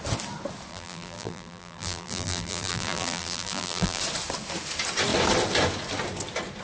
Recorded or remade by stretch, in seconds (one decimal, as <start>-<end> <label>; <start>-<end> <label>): 0.0-0.7 recorded; 0.7-4.0 remade; 4.0-6.6 recorded